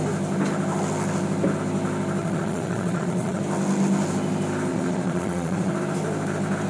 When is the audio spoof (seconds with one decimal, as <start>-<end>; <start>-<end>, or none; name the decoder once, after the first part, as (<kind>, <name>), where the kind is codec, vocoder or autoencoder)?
2.2-3.4 (vocoder, Vocos); 4.7-5.7

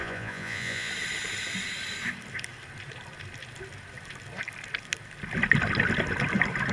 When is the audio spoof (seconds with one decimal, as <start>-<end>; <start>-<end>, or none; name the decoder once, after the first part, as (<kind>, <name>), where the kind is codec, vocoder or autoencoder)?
0.0-0.9 (vocoder, Vocos)

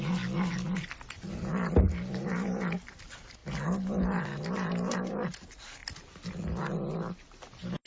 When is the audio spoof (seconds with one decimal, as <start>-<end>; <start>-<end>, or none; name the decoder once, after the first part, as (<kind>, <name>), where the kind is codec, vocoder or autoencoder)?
none

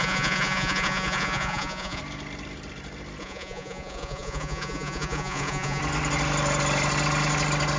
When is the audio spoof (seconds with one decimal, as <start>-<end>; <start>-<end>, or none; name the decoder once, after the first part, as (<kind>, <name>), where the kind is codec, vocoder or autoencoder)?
0.0-2.0 (vocoder, Vocos); 3.2-5.8

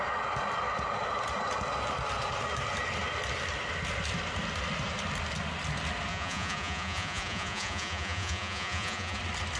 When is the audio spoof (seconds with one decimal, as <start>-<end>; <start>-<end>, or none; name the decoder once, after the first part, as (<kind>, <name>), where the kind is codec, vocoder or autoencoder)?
6.1-9.2 (vocoder, Vocos)

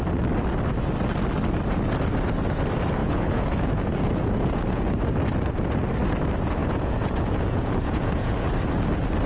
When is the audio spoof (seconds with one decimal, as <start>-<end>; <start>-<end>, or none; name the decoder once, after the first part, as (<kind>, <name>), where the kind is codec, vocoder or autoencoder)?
3.0-5.0 (vocoder, Vocos); 6.6-8.5

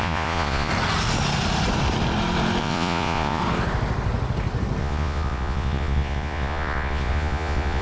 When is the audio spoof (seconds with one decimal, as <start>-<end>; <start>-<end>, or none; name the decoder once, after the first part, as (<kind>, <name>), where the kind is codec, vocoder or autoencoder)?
0.0-0.7 (vocoder, Vocos); 2.6-3.4; 4.8-7.8

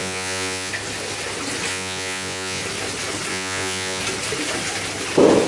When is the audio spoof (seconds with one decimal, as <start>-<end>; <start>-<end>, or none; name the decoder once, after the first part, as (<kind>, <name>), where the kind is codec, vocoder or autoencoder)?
0.0-0.7 (vocoder, Vocos); 1.7-2.6; 3.3-4.0